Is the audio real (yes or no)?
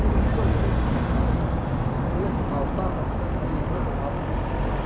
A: yes